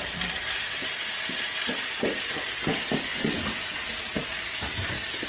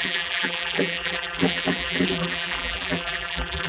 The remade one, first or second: second